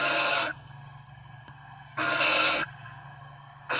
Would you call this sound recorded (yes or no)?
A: no